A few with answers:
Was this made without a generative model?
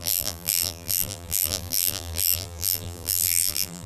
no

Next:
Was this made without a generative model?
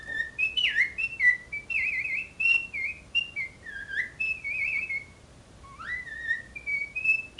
yes